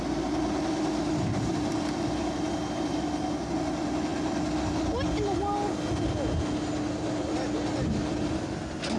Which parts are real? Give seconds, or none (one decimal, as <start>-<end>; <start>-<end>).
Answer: 0.0-9.0